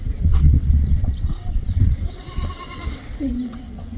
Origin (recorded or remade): remade